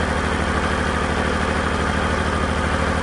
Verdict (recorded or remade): recorded